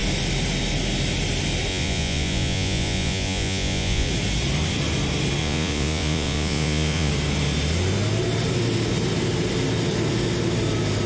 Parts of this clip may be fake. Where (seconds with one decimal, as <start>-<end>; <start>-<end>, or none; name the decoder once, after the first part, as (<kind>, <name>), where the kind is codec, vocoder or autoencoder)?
1.7-4.1 (vocoder, Vocos); 5.4-7.1